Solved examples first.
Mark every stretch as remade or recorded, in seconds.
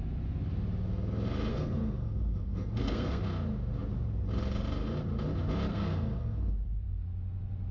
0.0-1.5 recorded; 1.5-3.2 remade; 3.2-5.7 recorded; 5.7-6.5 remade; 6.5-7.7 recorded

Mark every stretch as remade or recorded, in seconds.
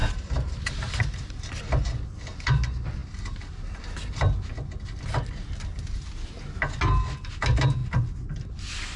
0.0-9.0 recorded